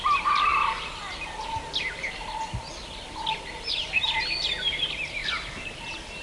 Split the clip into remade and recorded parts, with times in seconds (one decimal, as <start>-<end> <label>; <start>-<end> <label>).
0.0-6.2 recorded